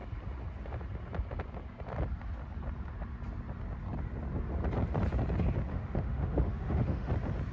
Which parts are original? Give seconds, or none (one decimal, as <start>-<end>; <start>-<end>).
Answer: 0.0-5.7; 7.1-7.5